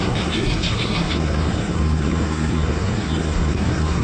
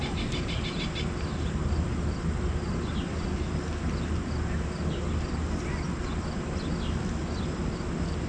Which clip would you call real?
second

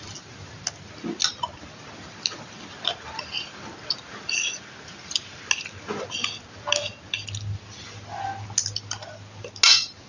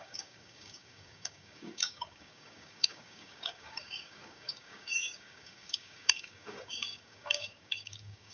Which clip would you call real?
first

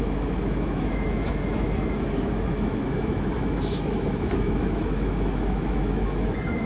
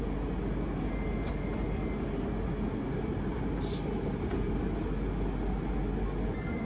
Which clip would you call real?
second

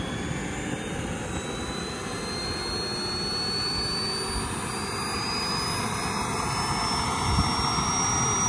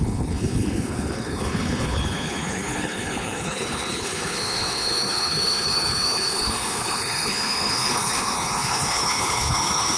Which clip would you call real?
first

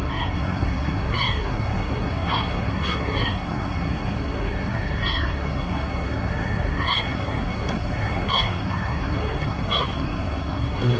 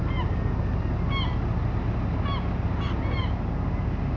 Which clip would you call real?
second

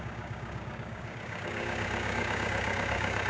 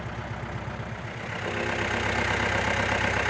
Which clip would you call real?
second